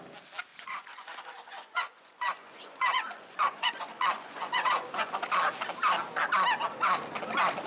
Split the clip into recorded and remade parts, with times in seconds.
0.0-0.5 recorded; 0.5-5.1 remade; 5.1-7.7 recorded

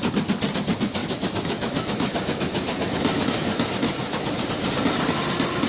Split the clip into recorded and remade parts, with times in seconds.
0.0-1.0 recorded; 1.0-4.4 remade; 4.4-5.7 recorded

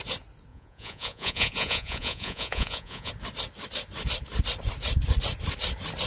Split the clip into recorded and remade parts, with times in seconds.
0.0-0.5 recorded; 0.5-3.1 remade; 3.1-6.1 recorded

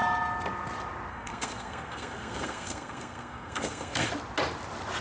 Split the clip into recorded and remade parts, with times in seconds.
0.0-1.1 recorded; 1.1-4.1 remade; 4.1-5.0 recorded

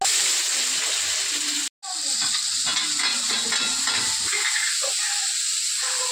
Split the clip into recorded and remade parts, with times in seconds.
0.0-6.1 recorded

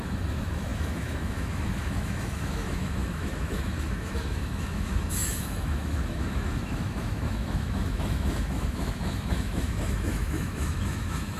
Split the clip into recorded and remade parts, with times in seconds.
0.0-11.4 remade

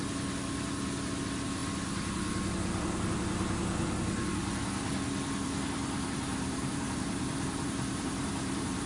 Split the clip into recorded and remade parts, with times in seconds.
0.0-6.3 recorded; 6.3-8.9 remade